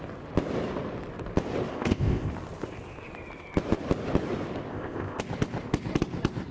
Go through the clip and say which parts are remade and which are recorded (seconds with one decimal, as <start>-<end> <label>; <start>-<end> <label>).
0.0-1.7 recorded; 1.7-2.3 remade; 2.3-4.7 recorded; 4.7-5.2 remade; 5.2-6.5 recorded